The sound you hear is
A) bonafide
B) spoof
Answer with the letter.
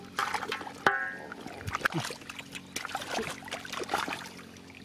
A